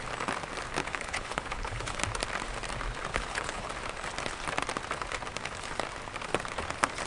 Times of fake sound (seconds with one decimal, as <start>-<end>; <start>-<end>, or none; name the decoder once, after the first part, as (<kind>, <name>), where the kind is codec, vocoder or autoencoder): 0.8-2.0 (codec, HILCodec); 3.1-3.7

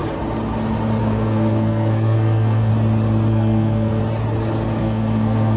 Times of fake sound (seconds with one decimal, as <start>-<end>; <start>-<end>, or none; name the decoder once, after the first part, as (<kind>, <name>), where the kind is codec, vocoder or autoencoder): 1.0-2.7 (codec, SNAC); 3.3-4.0; 4.8-5.6

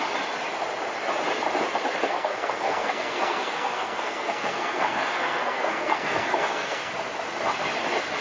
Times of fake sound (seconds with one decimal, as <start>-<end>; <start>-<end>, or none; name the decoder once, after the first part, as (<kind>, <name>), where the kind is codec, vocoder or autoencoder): 2.0-6.9 (codec, SNAC)

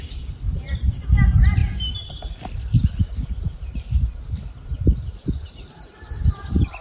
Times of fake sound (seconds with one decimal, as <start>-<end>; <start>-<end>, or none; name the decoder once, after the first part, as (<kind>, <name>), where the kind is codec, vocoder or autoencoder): 0.0-1.6 (vocoder, BigVGAN v2); 2.1-6.8

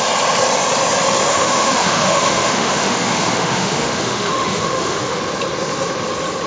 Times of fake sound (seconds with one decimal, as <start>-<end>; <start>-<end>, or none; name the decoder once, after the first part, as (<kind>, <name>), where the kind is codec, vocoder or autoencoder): 1.3-5.2 (autoencoder, DAC-VAE)

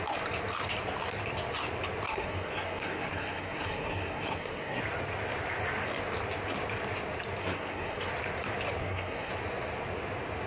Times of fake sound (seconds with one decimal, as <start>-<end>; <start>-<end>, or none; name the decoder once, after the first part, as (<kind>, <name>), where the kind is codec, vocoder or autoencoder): 2.1-4.8 (codec, SNAC); 7.4-8.1; 8.8-9.3

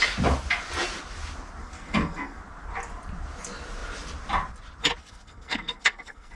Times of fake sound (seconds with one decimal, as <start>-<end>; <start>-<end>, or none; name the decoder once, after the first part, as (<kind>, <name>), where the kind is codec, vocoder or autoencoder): 1.6-2.4 (codec, SNAC); 5.0-6.4